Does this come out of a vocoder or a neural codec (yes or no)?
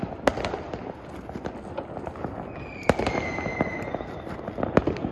no